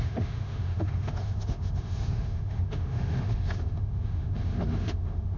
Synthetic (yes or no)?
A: yes